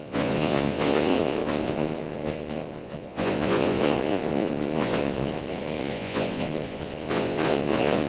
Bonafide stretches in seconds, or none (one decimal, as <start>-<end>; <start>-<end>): none